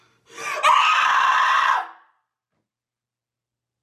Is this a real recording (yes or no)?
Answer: yes